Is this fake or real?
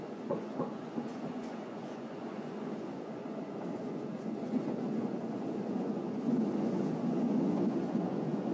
fake